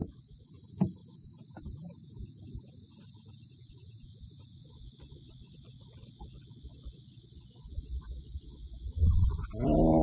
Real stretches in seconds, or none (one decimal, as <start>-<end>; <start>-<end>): 0.5-4.6; 9.4-10.0